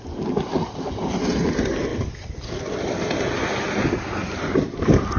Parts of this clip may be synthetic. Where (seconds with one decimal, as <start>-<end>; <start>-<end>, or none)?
none